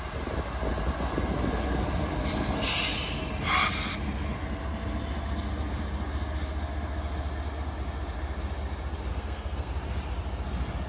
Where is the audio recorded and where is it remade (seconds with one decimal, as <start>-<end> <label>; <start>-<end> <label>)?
0.0-9.1 recorded; 9.1-9.7 remade; 9.7-10.9 recorded